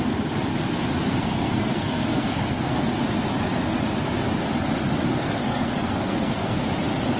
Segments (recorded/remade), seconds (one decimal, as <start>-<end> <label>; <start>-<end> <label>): 0.0-1.1 recorded; 1.1-2.9 remade; 2.9-5.2 recorded; 5.2-6.6 remade; 6.6-7.2 recorded